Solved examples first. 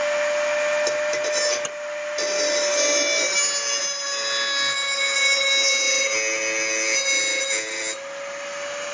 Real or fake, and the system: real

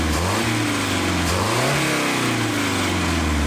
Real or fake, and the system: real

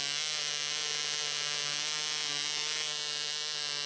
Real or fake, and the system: real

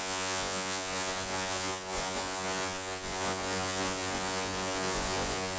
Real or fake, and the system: fake, vocoder, Vocos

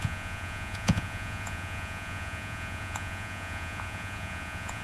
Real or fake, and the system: fake, vocoder, Vocos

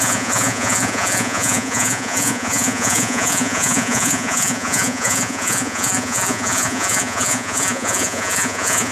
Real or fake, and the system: fake, vocoder, Vocos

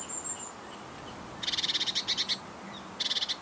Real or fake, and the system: real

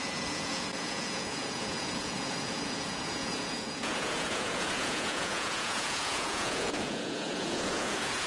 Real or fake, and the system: fake, vocoder, Vocos